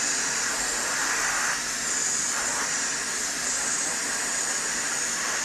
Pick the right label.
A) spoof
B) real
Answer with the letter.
B